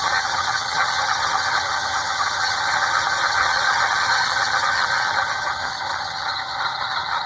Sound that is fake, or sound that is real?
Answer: fake